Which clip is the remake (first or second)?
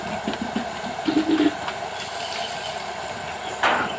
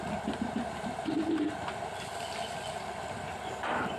second